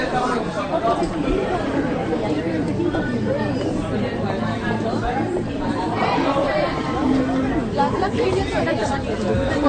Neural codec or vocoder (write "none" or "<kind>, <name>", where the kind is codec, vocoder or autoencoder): vocoder, BigVGAN v2